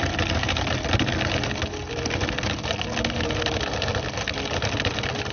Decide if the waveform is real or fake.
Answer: real